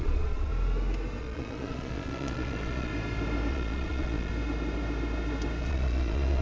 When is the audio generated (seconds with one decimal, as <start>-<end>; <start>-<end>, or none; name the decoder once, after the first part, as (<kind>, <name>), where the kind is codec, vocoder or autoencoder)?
0.0-0.5 (vocoder, Vocos); 1.2-2.9; 3.5-4.3; 5.6-6.4